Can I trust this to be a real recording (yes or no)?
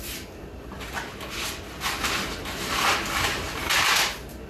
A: yes